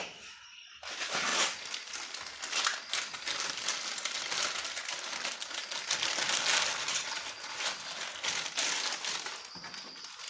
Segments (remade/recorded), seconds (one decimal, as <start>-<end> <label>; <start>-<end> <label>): 0.0-1.3 recorded; 1.3-1.9 remade; 1.9-10.3 recorded

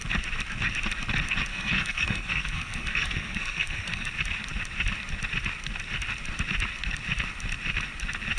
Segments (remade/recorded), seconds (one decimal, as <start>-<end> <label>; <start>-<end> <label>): 0.0-1.5 recorded; 1.5-4.1 remade; 4.1-8.4 recorded

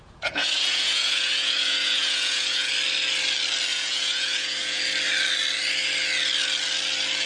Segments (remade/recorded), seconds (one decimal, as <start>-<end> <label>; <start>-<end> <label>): 0.0-2.7 remade; 2.7-3.7 recorded; 3.7-4.8 remade; 4.8-7.3 recorded

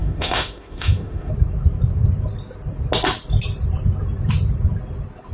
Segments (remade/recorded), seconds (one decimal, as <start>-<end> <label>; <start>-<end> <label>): 0.0-1.3 remade; 1.3-5.3 recorded

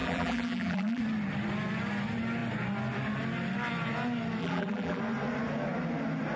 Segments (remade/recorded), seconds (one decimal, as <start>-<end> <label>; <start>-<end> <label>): 0.0-1.0 remade; 1.0-4.4 recorded; 4.4-5.0 remade; 5.0-6.4 recorded

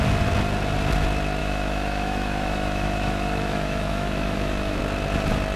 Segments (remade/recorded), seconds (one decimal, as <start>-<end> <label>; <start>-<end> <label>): 0.0-1.4 recorded; 1.4-4.8 remade; 4.8-5.6 recorded